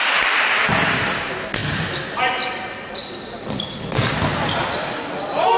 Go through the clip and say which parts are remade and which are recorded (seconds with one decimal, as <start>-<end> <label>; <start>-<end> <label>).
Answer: 0.0-5.6 recorded